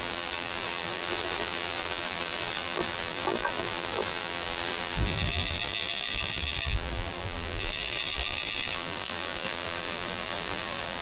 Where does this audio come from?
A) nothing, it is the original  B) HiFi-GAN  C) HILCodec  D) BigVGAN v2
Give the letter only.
D